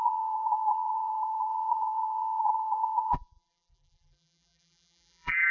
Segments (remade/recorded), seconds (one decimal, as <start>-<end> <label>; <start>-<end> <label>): 0.0-5.5 remade